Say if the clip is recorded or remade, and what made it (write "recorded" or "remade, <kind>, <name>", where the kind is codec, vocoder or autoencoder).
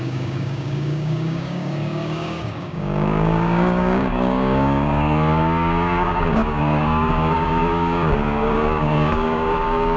remade, codec, DAC